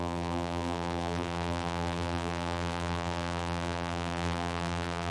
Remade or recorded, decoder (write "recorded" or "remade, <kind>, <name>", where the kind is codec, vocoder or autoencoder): remade, vocoder, BigVGAN v2